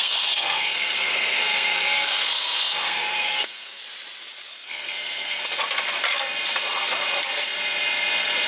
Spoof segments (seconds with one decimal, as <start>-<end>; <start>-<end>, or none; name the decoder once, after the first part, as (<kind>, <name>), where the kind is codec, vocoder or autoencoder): 0.0-3.8 (codec, SNAC); 4.5-5.4

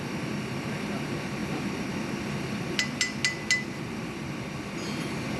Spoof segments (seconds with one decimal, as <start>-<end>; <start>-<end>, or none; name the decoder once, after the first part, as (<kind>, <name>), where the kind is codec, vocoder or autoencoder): none

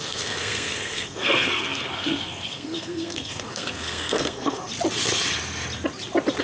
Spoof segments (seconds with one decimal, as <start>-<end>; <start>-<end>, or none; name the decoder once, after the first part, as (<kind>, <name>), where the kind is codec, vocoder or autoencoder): 0.0-4.7 (codec, SNAC)

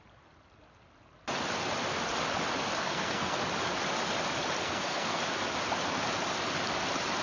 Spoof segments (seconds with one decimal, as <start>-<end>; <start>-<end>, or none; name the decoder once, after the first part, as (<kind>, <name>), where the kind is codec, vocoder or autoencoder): 2.8-3.4 (codec, SNAC); 4.6-5.2

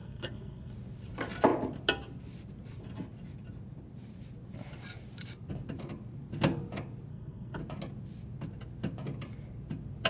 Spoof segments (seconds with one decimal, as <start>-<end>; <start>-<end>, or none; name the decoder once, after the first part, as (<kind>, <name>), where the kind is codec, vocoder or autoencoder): 0.0-0.7 (codec, SNAC); 7.1-7.6

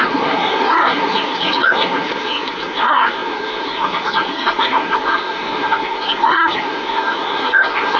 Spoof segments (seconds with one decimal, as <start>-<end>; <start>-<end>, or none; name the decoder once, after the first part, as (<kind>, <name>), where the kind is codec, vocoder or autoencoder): 0.0-8.0 (codec, SNAC)